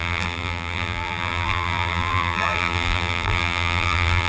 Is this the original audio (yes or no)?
no